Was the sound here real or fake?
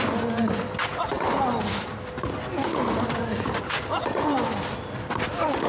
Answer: real